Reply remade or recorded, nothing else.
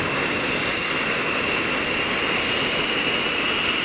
recorded